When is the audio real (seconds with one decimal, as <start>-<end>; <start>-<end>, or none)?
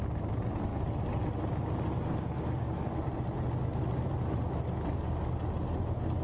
0.0-6.2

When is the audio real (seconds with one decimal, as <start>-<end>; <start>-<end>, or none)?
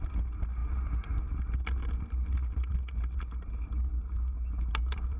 0.0-2.4; 3.2-5.2